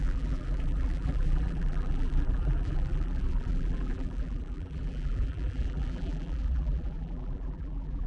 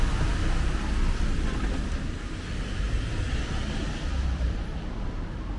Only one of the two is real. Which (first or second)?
second